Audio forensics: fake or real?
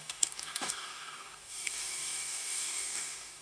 fake